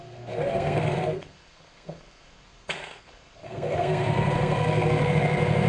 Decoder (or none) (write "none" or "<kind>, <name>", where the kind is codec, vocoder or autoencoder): codec, SNAC